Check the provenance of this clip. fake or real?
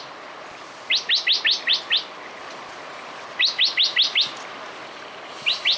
real